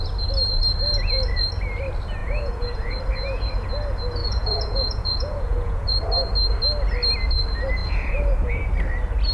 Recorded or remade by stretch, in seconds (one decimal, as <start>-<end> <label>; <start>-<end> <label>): 0.0-2.2 recorded; 2.2-3.0 remade; 3.0-4.2 recorded; 4.2-6.0 remade; 6.0-7.8 recorded; 7.8-8.5 remade; 8.5-9.3 recorded